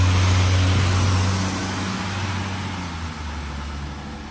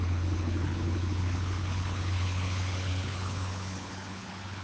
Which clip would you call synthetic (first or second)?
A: second